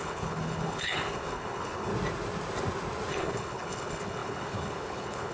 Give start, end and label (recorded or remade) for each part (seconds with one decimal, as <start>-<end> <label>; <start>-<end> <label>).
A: 0.0-1.9 remade; 1.9-3.1 recorded; 3.1-5.3 remade